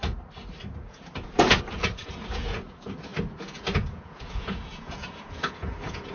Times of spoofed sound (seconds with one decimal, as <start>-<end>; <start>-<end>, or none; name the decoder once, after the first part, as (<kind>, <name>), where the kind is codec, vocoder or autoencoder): 0.9-6.1 (vocoder, Vocos)